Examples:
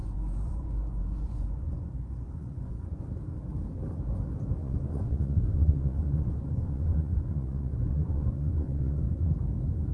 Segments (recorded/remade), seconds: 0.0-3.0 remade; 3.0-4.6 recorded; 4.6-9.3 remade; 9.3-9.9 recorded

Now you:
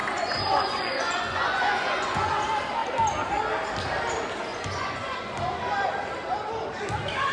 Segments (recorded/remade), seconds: 0.0-2.4 remade; 2.4-4.5 recorded; 4.5-5.3 remade; 5.3-7.3 recorded

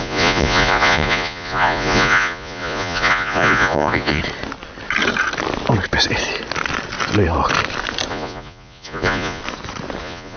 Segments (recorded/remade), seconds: 0.0-4.2 remade; 4.2-8.1 recorded; 8.1-9.4 remade; 9.4-10.0 recorded; 10.0-10.4 remade